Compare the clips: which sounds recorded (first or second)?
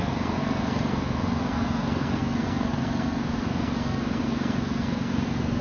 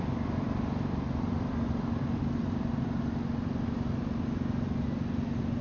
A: second